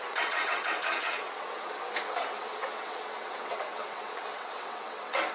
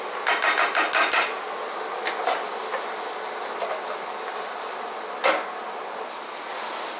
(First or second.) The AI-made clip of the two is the first